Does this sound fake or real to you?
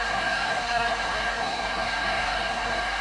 fake